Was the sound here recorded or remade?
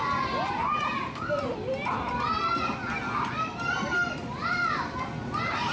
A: recorded